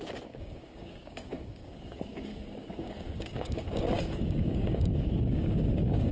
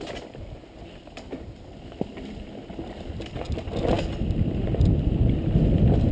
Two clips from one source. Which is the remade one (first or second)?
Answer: first